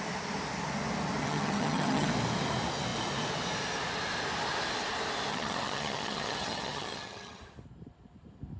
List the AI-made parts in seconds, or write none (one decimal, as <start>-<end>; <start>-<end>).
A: 1.2-2.1; 5.3-7.4